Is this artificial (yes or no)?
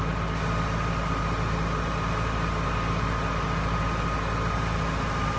no